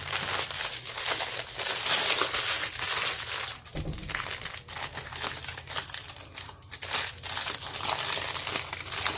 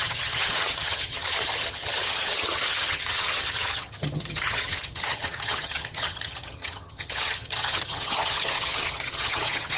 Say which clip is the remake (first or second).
second